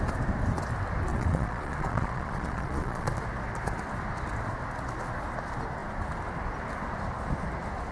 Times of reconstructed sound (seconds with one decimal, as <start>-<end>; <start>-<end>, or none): 1.1-3.1